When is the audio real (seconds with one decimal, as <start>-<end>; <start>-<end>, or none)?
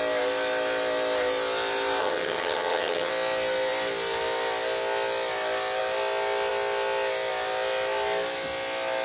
0.0-2.0; 3.1-9.0